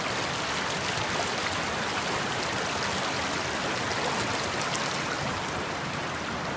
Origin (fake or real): real